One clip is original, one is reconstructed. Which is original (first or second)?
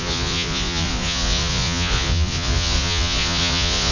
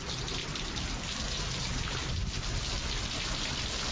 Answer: second